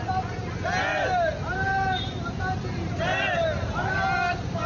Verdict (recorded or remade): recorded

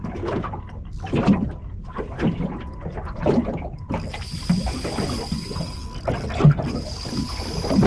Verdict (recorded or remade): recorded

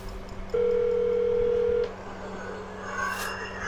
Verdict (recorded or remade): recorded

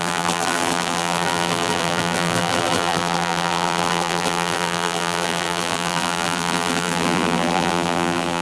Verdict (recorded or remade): remade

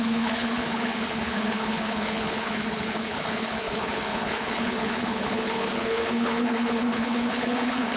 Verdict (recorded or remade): remade